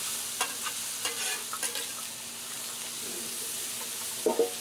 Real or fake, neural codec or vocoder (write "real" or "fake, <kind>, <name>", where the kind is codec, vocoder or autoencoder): real